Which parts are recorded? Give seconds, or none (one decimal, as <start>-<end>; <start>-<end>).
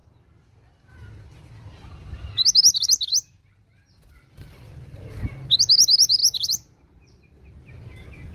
0.0-6.2; 7.5-8.3